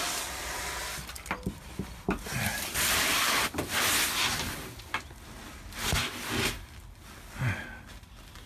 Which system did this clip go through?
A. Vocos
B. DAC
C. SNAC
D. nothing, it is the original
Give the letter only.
D